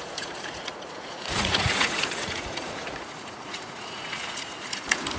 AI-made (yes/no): yes